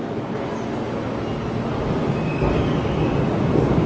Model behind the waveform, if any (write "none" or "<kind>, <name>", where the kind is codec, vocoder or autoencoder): none